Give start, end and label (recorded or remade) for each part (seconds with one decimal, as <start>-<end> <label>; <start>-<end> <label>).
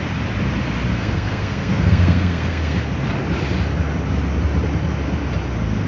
0.0-0.9 recorded; 0.9-2.8 remade; 2.8-5.9 recorded